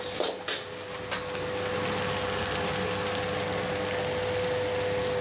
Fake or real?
real